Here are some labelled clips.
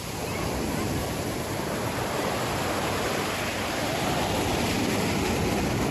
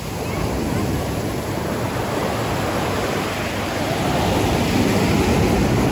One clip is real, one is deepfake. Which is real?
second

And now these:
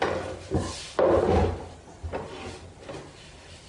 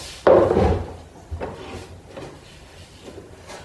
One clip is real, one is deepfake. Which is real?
first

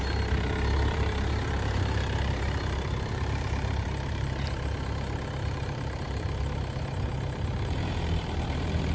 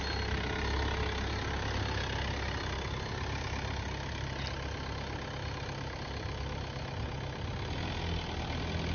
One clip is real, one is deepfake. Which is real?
second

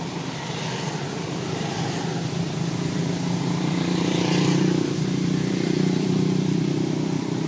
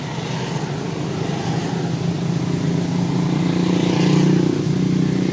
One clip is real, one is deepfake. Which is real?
second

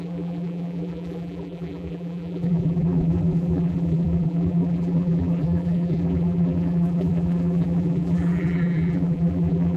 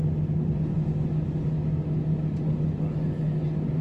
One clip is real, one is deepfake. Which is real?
second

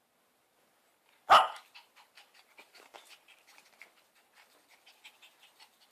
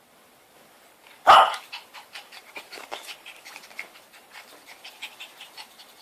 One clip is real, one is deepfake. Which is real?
first